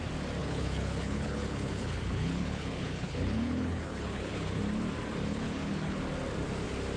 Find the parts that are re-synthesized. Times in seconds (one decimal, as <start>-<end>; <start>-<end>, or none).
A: 0.4-4.6; 5.3-6.0